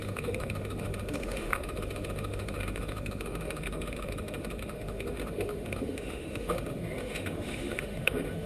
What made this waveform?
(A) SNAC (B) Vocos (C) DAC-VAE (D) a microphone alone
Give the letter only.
C